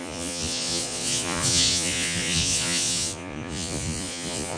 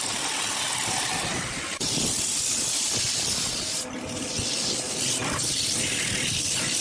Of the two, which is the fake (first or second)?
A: first